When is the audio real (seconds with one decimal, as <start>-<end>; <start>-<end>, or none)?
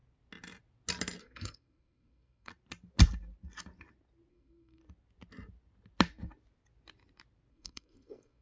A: 0.0-1.2; 2.5-4.3; 4.8-7.5